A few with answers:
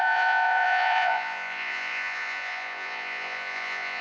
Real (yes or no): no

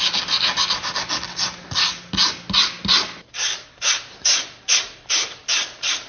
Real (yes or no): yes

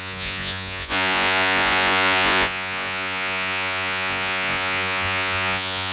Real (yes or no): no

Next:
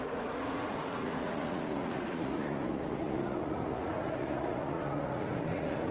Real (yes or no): no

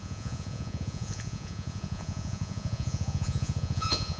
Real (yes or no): no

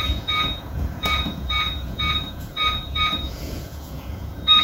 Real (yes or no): no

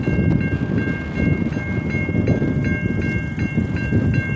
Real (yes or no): yes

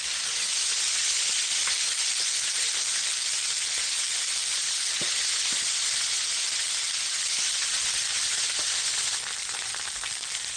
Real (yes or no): yes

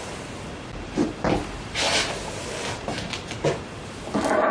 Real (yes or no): yes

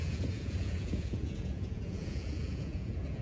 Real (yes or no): no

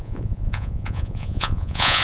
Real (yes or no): no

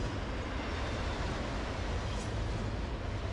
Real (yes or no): yes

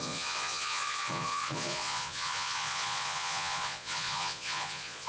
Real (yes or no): no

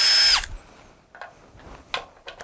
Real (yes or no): yes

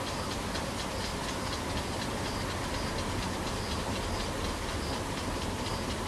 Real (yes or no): yes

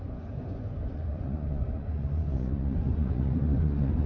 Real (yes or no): no